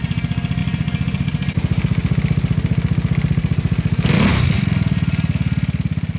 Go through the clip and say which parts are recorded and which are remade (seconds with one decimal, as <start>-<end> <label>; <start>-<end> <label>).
0.0-6.2 recorded